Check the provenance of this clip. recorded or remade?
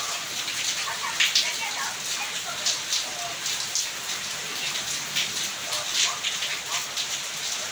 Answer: recorded